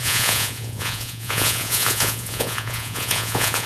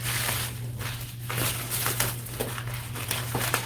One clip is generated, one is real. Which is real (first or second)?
second